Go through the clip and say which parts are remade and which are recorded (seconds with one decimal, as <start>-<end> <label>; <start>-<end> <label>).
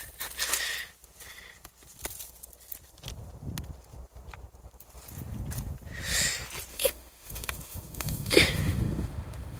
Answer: 0.0-6.7 recorded; 6.7-9.6 remade